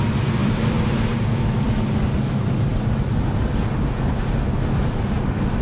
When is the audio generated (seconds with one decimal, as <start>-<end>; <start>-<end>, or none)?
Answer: 0.4-1.3